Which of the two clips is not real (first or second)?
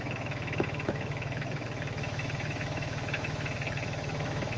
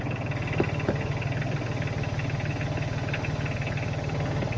first